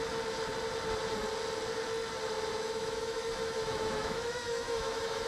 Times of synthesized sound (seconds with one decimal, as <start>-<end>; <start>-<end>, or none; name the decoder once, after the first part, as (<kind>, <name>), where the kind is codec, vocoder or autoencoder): 2.5-5.3 (autoencoder, DAC-VAE)